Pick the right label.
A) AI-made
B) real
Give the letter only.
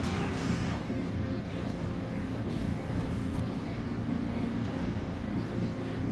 A